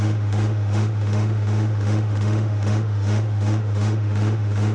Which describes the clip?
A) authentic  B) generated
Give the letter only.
B